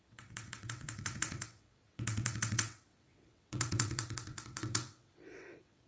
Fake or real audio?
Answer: fake